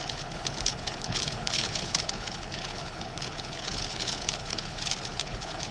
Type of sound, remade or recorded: remade